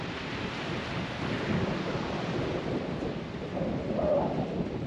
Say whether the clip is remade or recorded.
recorded